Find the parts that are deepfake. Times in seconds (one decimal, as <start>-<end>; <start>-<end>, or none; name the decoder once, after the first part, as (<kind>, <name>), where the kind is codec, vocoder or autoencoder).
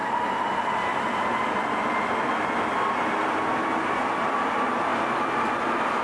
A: none